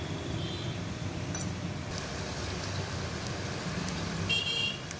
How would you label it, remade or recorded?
recorded